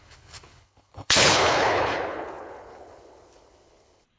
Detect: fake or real fake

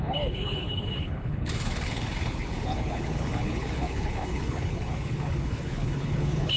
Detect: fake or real fake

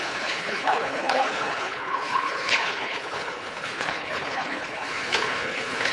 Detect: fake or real fake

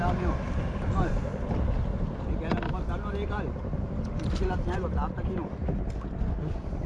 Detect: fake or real real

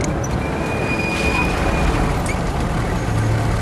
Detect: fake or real real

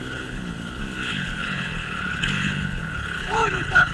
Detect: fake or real fake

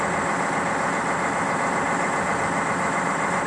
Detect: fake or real real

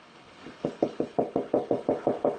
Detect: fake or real fake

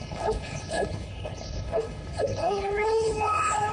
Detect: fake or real fake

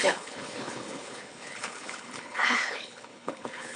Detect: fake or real fake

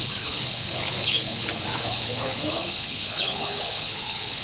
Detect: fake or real fake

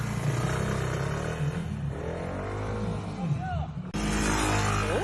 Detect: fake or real real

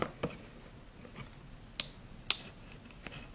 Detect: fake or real real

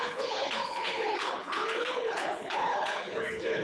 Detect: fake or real fake